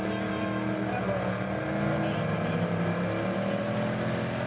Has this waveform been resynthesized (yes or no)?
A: no